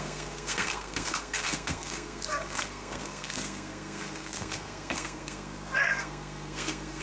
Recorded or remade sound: remade